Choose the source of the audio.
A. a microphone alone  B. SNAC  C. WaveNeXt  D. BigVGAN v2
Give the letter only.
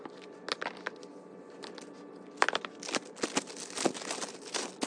A